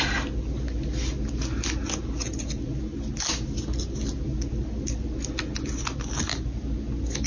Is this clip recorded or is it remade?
recorded